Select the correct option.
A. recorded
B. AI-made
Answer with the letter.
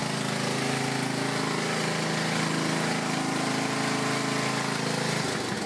A